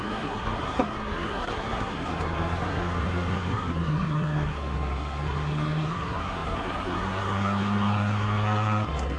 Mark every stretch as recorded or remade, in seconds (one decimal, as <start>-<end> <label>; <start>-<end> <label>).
0.0-9.2 remade